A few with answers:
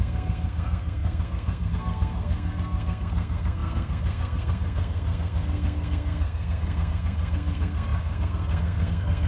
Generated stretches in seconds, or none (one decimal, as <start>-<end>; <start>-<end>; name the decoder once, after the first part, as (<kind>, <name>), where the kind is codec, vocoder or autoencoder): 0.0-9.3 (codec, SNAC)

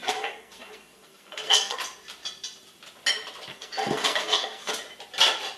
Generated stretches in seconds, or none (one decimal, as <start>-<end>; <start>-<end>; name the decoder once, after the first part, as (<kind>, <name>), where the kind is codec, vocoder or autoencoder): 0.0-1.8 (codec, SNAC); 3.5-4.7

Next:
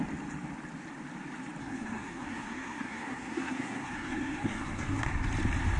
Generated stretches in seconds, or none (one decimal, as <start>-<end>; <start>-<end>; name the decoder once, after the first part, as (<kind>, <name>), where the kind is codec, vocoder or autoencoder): 1.6-5.1 (codec, SNAC)

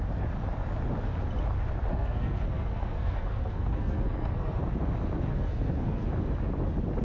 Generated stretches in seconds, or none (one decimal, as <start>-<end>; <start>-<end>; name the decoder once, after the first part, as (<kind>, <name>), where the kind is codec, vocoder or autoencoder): 1.9-4.6 (codec, SNAC); 5.3-6.1

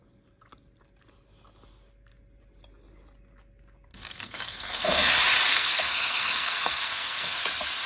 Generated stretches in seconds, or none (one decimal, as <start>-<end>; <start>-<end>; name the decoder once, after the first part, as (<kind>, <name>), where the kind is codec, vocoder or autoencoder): 3.9-5.1 (codec, SNAC); 5.5-7.4

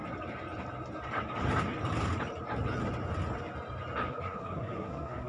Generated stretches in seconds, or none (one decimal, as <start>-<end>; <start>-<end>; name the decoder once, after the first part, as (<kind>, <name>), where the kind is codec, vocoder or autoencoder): 4.1-5.3 (codec, SNAC)

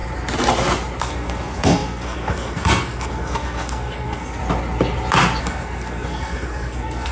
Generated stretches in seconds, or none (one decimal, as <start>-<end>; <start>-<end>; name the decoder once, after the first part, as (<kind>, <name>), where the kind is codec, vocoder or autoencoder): 1.0-4.4 (codec, SNAC); 5.4-7.1